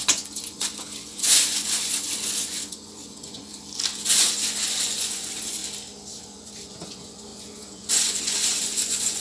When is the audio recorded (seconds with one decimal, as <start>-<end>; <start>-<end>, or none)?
3.5-4.0; 5.6-6.2